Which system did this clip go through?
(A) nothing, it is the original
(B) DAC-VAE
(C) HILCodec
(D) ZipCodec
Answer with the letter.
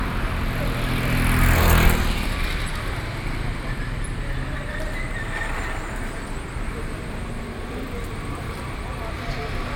A